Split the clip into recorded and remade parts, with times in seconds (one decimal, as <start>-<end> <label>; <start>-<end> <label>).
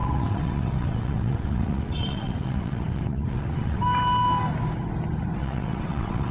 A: 0.0-3.8 remade; 3.8-5.4 recorded; 5.4-6.3 remade